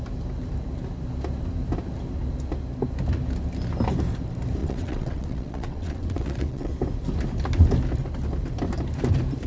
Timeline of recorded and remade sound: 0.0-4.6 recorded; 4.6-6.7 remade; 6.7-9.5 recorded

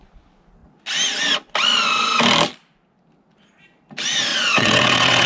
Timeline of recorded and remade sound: 0.0-4.3 recorded; 4.3-5.3 remade

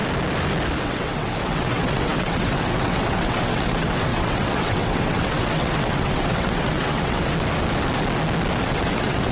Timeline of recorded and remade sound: 0.0-0.8 recorded; 0.8-7.3 remade; 7.3-8.6 recorded; 8.6-9.3 remade

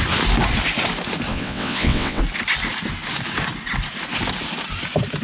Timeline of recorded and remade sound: 0.0-1.3 recorded; 1.3-2.2 remade; 2.2-5.2 recorded

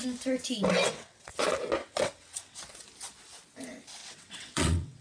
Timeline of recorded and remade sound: 0.0-0.8 recorded; 0.8-1.4 remade; 1.4-1.8 recorded; 1.8-2.6 remade; 2.6-4.0 recorded; 4.0-5.0 remade

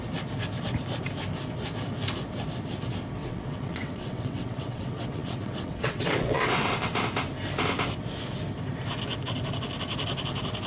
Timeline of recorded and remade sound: 0.0-3.2 recorded; 3.2-6.9 remade; 6.9-10.7 recorded

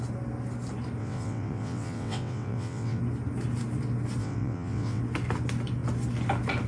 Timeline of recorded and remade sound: 0.0-1.0 recorded; 1.0-3.0 remade; 3.0-4.2 recorded; 4.2-5.0 remade; 5.0-6.7 recorded